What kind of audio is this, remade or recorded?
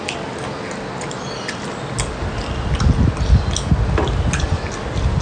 recorded